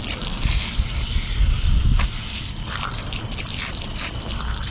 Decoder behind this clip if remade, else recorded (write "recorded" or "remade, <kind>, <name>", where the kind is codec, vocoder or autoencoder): recorded